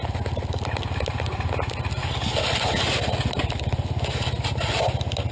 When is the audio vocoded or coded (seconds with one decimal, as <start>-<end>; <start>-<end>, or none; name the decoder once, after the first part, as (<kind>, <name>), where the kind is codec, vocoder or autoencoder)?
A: none